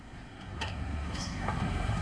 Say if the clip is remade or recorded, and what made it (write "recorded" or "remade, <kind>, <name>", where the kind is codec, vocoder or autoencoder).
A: remade, codec, SNAC